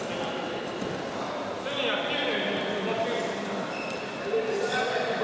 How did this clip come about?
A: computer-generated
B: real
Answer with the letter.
B